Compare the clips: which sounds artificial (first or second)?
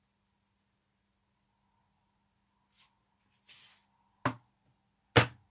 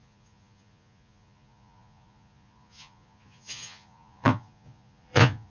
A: second